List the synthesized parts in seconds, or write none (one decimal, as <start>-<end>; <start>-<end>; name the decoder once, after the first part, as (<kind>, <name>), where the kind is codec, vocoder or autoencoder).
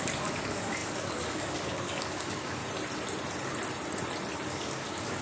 0.0-2.6 (codec, DAC); 4.5-5.2